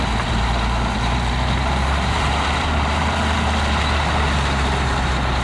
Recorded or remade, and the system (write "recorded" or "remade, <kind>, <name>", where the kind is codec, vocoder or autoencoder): remade, vocoder, BigVGAN v2